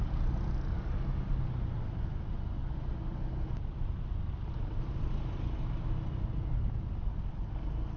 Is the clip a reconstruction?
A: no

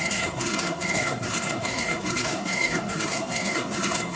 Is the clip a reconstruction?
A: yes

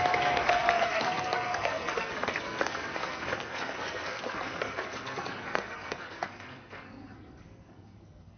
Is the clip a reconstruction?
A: yes